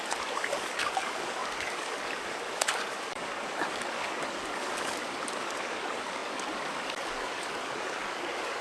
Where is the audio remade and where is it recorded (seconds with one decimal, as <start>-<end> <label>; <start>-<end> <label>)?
0.0-8.6 remade